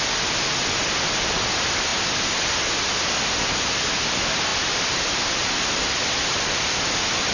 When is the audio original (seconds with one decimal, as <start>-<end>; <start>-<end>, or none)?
0.0-4.5; 6.0-7.3